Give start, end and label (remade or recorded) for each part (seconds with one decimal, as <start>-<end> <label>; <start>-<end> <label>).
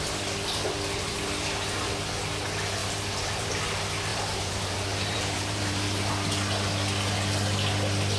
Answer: 0.0-2.8 recorded; 2.8-3.6 remade; 3.6-4.1 recorded; 4.1-6.1 remade; 6.1-8.2 recorded